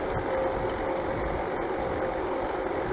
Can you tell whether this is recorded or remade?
recorded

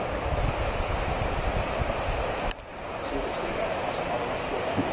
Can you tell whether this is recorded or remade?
remade